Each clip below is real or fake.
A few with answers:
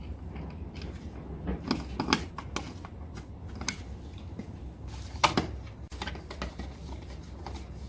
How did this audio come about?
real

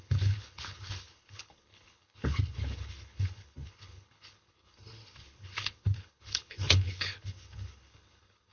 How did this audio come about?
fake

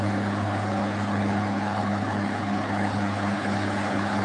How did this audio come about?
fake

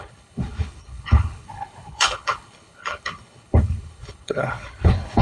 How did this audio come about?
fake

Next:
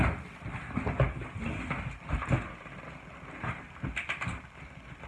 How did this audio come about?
real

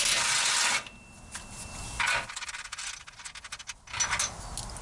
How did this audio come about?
real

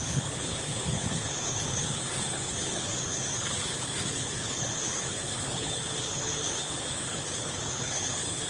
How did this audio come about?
fake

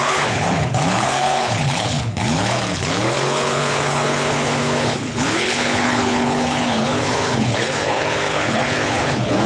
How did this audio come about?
fake